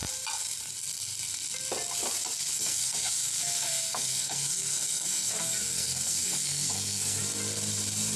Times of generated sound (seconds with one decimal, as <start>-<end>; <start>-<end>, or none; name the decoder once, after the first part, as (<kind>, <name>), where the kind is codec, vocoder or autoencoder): 2.5-7.2 (codec, SNAC)